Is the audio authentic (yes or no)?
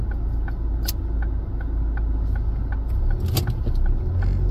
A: yes